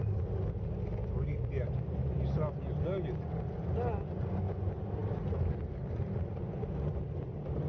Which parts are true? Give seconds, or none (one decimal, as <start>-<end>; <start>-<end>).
0.0-7.7